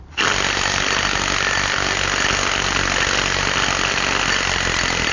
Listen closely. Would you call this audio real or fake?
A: real